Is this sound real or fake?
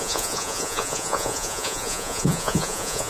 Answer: fake